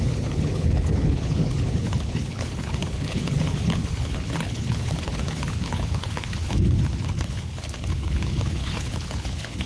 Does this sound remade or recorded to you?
remade